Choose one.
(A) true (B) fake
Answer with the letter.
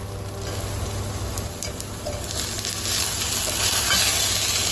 A